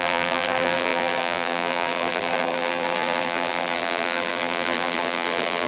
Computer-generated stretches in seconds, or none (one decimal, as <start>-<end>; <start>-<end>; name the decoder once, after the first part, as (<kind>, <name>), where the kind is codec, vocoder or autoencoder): 0.0-5.7 (vocoder, BigVGAN v2)

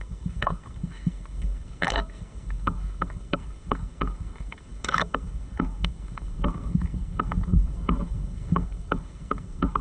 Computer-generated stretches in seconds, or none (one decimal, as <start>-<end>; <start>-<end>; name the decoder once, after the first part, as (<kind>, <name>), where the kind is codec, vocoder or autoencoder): 0.0-9.8 (codec, SNAC)

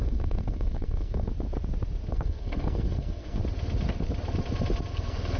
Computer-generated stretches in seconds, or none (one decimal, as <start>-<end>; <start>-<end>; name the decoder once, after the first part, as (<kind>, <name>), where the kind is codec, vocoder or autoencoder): 0.0-1.3 (codec, SNAC); 2.1-3.4; 4.9-5.4

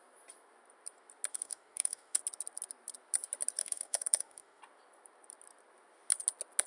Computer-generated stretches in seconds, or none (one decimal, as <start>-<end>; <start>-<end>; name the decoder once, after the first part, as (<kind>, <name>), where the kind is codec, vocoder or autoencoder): 1.3-2.2 (autoencoder, DAC-VAE); 3.6-4.6

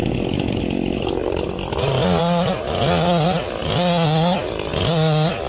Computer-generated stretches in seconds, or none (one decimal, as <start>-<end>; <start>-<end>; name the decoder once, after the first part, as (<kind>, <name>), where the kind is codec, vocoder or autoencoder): none